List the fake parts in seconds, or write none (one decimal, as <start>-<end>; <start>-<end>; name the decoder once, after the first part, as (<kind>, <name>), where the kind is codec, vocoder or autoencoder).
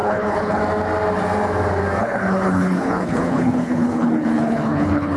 0.0-0.6 (codec, HILCodec); 2.0-5.2